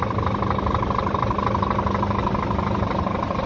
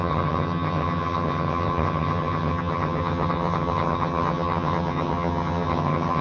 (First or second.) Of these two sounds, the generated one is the second